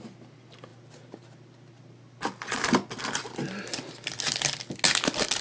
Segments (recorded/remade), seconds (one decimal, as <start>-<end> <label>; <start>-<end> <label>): 0.0-5.4 recorded